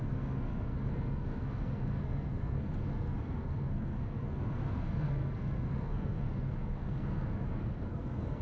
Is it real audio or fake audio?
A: fake